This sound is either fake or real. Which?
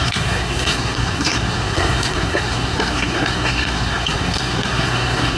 fake